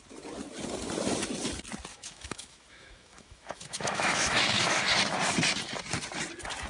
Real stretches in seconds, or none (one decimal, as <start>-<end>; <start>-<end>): 0.0-1.9; 4.8-6.7